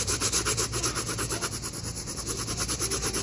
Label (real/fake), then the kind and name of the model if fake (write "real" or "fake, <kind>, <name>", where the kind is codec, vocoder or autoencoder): real